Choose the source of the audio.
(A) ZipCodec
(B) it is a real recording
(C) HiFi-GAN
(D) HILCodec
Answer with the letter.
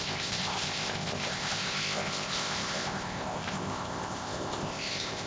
A